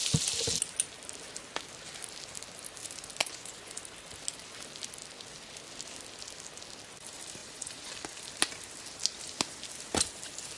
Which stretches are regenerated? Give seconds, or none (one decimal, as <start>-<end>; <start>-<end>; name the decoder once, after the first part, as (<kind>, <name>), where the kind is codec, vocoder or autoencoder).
3.2-3.8 (vocoder, Vocos); 7.4-7.9